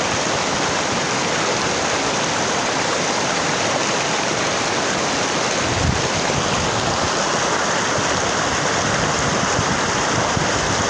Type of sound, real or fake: real